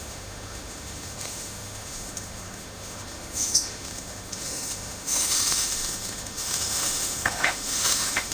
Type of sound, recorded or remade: remade